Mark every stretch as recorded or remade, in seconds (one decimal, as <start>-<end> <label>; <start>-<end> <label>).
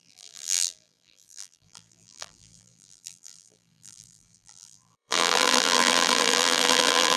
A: 0.0-7.2 remade